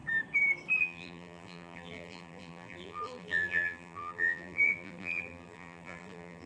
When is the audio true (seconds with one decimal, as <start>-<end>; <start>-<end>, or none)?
0.0-0.8